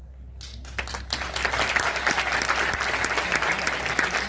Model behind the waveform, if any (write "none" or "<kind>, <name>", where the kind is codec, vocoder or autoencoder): none